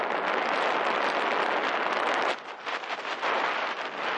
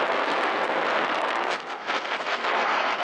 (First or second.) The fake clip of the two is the second